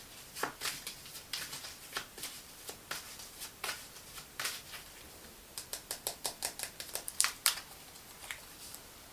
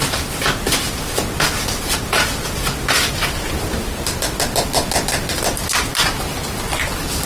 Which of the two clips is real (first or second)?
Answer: second